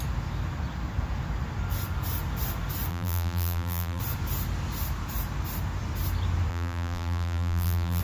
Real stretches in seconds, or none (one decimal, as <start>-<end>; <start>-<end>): 0.0-2.9; 4.0-6.5